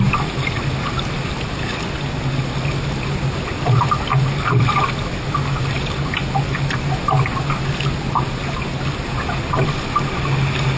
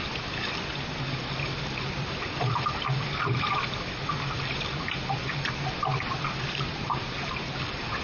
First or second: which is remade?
second